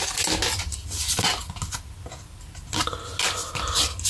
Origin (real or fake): real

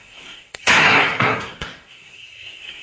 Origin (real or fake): fake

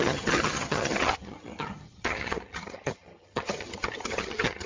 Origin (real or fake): fake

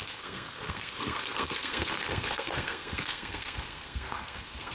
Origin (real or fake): fake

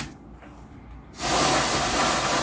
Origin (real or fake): real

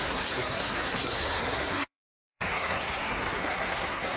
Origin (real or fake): fake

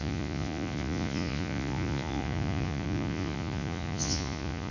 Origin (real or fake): fake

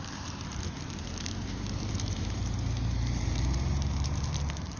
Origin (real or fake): fake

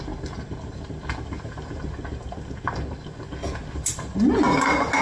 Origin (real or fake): real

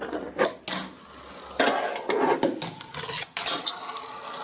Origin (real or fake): real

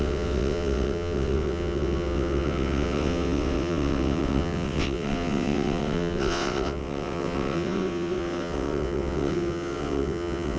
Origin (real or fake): fake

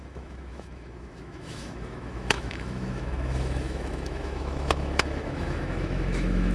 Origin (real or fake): fake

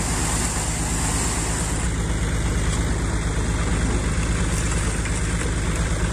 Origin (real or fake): real